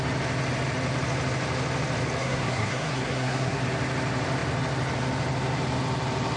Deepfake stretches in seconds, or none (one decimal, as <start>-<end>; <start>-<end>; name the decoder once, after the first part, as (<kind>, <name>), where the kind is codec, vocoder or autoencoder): 2.2-3.6 (codec, SNAC)